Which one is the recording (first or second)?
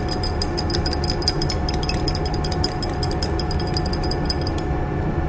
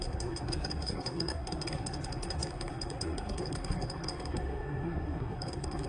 first